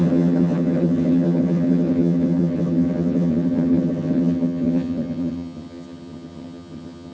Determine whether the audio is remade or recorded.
remade